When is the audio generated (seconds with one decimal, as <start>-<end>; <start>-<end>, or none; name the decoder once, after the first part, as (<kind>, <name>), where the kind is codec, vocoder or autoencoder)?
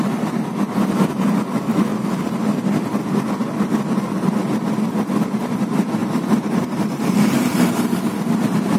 6.0-8.1 (vocoder, BigVGAN v2)